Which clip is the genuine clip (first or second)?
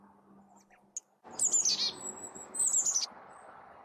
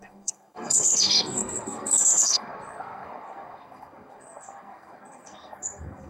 first